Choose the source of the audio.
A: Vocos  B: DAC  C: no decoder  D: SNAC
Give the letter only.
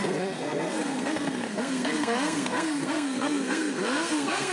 D